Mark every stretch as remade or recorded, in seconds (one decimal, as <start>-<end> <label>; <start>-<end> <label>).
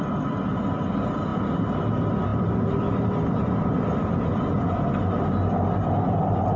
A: 0.0-6.6 recorded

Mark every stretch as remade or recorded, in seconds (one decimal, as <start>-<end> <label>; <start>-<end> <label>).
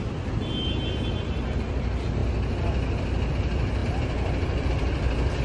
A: 0.0-1.1 recorded; 1.1-2.2 remade; 2.2-3.3 recorded; 3.3-3.8 remade; 3.8-4.6 recorded; 4.6-5.4 remade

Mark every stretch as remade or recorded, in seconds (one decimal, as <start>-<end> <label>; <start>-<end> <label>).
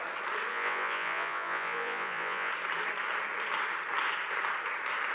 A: 0.0-0.5 recorded; 0.5-2.5 remade; 2.5-5.1 recorded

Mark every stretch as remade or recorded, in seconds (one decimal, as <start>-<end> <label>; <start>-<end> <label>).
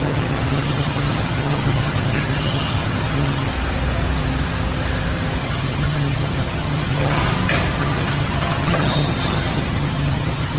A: 0.0-3.5 remade; 3.5-5.4 recorded; 5.4-7.2 remade; 7.2-7.8 recorded; 7.8-10.6 remade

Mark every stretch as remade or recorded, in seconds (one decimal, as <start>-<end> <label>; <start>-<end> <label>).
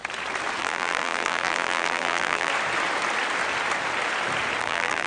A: 0.0-0.6 recorded; 0.6-2.5 remade; 2.5-4.6 recorded; 4.6-5.1 remade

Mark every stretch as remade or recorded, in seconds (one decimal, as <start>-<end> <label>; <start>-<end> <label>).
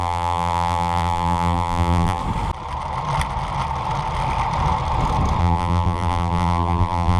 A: 0.0-2.2 remade; 2.2-5.4 recorded; 5.4-7.2 remade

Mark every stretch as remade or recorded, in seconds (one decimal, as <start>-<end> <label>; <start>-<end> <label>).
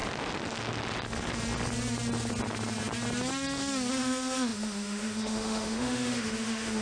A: 0.0-3.9 recorded; 3.9-6.8 remade